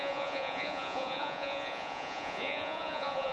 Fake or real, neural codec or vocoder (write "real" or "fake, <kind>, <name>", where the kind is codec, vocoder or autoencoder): fake, vocoder, Vocos